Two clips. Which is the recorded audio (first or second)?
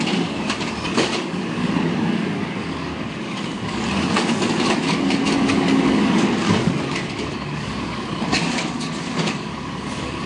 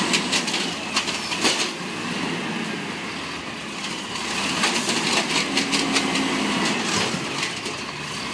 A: second